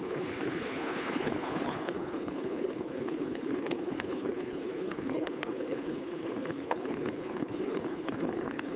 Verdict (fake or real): fake